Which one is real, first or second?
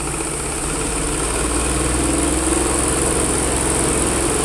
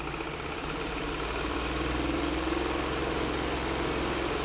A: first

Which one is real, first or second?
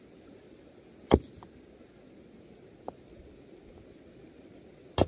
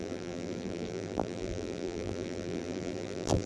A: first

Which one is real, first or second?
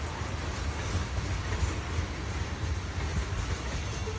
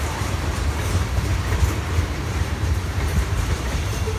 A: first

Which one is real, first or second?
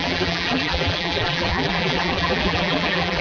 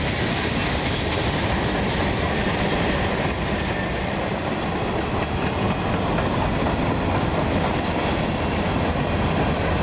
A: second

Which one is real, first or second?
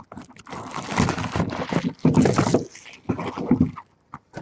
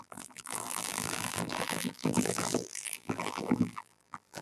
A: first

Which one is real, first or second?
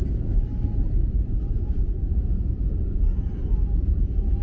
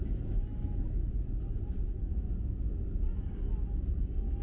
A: second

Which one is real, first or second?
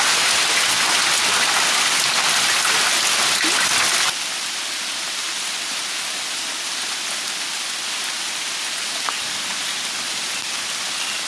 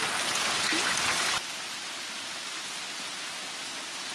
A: second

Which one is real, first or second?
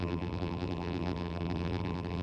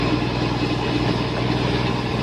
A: second